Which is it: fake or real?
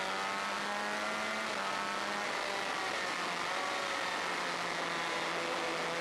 real